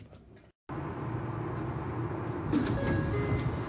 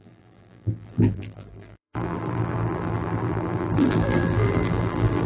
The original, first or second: first